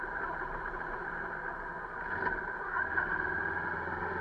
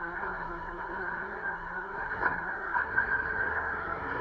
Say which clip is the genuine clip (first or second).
first